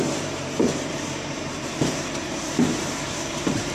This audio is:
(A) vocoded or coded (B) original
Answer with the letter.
A